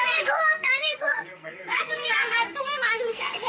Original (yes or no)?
no